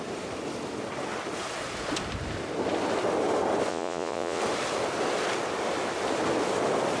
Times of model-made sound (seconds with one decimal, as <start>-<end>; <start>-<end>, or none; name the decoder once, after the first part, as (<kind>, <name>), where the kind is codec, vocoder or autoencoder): 3.7-4.4 (vocoder, Vocos)